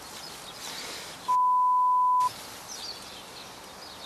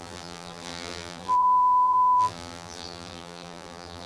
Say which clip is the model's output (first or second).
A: second